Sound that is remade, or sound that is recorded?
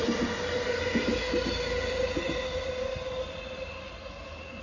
recorded